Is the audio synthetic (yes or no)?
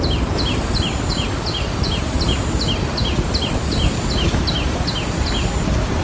no